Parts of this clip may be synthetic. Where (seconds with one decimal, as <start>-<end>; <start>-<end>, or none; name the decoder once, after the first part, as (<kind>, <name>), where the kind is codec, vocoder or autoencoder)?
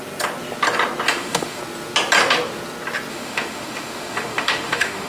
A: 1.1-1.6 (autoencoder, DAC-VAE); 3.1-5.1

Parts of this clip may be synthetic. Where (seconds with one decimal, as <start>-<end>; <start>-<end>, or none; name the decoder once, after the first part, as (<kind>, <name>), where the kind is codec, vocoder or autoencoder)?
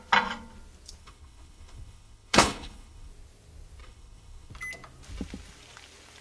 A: 1.0-3.1 (codec, HILCodec); 3.8-4.5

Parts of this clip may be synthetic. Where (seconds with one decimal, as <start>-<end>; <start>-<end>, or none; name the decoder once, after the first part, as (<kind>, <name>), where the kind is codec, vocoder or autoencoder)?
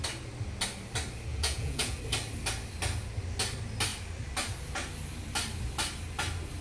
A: 1.3-2.0 (vocoder, Vocos)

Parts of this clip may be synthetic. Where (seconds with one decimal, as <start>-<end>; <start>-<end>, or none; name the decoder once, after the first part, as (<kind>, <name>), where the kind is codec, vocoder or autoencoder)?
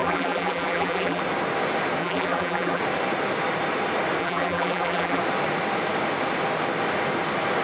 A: 0.0-1.2 (vocoder, BigVGAN v2); 2.0-2.8; 4.2-5.2